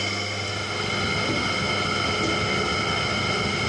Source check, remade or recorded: recorded